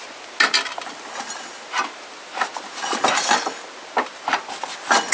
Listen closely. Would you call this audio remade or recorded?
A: recorded